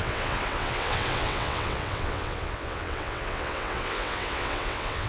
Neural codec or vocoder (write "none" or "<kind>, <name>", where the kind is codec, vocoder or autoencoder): vocoder, WaveNeXt